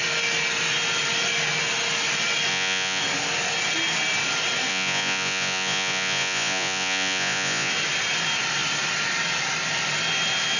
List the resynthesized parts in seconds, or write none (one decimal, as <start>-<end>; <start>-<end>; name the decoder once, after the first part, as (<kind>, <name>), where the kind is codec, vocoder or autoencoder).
2.5-3.0 (vocoder, Vocos); 4.7-7.7